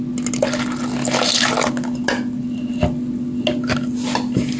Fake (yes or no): no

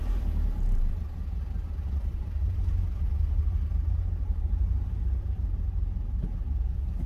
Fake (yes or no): yes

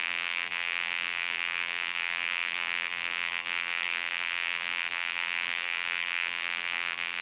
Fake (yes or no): yes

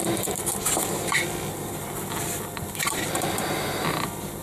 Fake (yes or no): yes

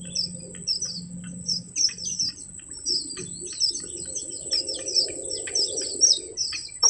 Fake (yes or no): no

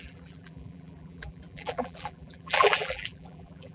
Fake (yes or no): yes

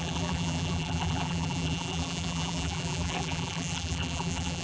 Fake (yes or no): yes